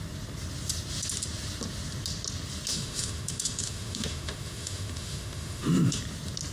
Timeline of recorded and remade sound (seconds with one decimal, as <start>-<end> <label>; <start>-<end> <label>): 0.0-2.7 recorded; 2.7-6.0 remade; 6.0-6.5 recorded